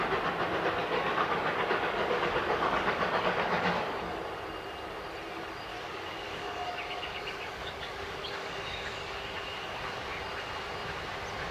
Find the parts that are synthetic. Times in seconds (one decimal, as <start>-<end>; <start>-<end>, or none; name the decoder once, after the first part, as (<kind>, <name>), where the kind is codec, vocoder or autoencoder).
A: 0.8-4.2 (codec, DAC); 5.7-10.2